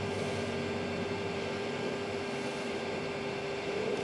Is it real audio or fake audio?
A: real